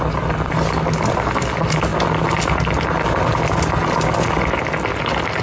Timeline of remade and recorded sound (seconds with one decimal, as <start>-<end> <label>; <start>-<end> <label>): 0.0-5.4 recorded